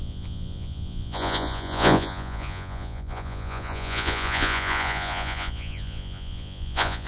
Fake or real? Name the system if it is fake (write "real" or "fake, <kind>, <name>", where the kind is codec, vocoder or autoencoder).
fake, vocoder, Vocos